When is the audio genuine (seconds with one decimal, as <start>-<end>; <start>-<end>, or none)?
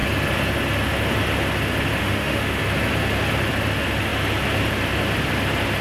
0.0-2.0; 2.6-5.8